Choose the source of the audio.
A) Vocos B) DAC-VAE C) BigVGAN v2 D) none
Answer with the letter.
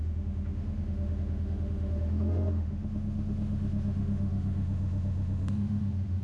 B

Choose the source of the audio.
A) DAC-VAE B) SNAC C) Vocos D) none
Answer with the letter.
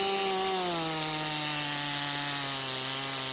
D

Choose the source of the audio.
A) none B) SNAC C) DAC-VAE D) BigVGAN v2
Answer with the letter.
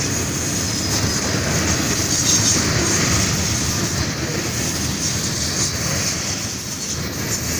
A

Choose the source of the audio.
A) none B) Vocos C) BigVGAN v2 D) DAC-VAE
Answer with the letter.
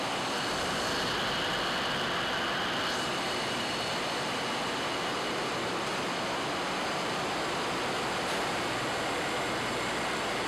A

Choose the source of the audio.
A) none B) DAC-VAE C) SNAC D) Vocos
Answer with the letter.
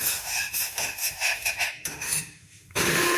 B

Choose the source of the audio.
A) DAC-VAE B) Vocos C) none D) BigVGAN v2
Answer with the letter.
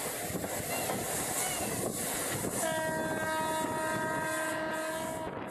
C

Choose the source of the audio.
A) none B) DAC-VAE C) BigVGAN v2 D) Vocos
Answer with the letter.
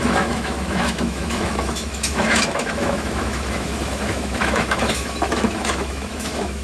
B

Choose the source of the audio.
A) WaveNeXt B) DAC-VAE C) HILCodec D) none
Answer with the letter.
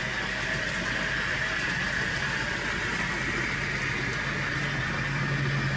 D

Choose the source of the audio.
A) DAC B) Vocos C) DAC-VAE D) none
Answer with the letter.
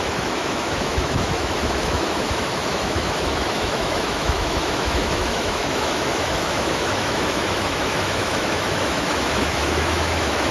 C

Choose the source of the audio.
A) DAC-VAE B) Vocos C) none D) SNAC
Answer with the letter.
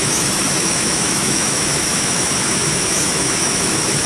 A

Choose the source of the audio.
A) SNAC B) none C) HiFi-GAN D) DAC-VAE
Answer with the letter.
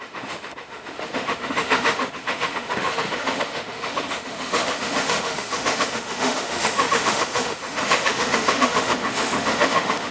D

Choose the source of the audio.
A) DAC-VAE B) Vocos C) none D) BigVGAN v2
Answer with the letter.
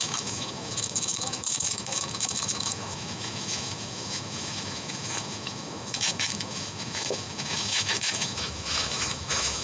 A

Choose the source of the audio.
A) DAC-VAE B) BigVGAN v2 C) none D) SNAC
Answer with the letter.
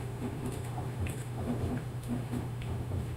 A